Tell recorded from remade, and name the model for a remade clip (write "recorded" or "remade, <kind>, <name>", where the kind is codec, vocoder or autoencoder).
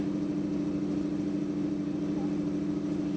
recorded